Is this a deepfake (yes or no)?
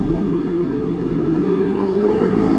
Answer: yes